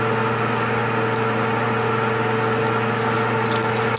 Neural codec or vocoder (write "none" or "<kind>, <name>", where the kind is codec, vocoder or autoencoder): none